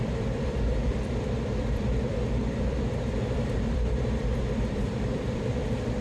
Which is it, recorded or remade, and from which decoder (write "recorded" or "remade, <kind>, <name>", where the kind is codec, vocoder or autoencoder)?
remade, vocoder, BigVGAN v2